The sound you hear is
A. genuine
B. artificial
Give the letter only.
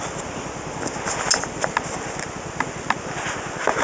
A